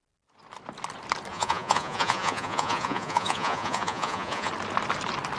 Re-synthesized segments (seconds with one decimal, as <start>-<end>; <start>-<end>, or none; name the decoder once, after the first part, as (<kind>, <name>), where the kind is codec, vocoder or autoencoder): 1.3-4.5 (vocoder, Vocos)